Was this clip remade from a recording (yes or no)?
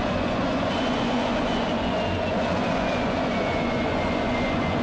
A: yes